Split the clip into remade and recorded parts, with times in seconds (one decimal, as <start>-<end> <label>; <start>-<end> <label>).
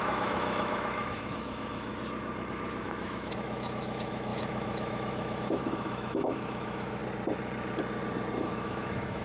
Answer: 0.0-1.9 remade; 1.9-2.5 recorded; 2.5-7.0 remade; 7.0-8.4 recorded; 8.4-9.2 remade